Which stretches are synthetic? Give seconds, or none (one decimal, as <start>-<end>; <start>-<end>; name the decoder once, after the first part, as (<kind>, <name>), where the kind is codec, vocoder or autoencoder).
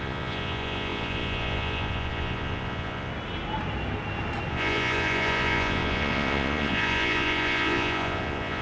0.0-3.1 (vocoder, Vocos); 4.5-8.6